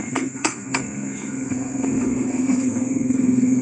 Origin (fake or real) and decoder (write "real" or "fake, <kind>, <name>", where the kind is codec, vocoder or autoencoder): fake, codec, SNAC